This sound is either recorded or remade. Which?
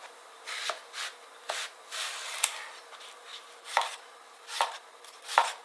recorded